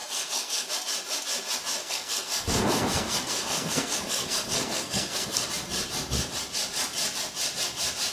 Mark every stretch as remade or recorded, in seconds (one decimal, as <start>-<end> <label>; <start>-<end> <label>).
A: 0.0-0.7 remade; 0.7-1.8 recorded; 1.8-5.5 remade; 5.5-8.1 recorded